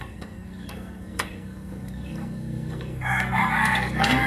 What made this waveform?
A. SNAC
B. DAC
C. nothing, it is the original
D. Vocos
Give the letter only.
A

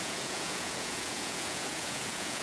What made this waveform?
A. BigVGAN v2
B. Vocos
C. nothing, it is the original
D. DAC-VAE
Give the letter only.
B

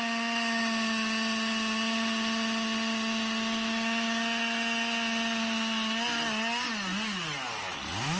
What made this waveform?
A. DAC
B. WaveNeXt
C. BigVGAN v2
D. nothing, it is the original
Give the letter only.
D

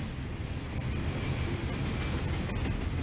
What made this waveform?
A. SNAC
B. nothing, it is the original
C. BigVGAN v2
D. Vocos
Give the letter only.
B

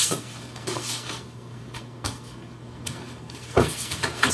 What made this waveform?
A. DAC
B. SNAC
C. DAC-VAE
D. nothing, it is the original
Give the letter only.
B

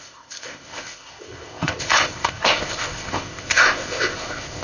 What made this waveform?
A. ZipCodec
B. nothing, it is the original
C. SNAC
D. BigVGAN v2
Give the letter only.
A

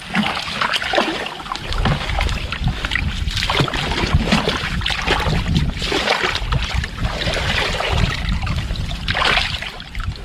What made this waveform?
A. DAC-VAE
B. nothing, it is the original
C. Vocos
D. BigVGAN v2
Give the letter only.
B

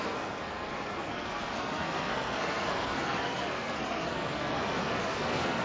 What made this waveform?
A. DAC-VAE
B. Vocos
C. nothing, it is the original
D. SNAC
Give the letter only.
D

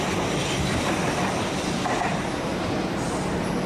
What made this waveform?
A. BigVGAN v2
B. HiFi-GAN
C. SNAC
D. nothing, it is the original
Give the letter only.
D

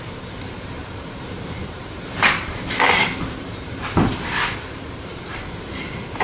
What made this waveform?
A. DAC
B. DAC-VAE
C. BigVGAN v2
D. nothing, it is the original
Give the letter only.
C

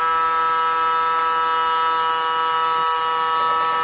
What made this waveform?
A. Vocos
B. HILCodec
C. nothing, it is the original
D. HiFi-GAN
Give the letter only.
C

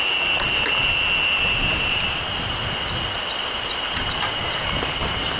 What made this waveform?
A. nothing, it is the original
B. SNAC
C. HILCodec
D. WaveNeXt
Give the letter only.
A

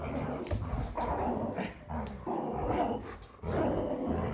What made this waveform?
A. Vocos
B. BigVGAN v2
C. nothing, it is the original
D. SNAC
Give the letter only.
C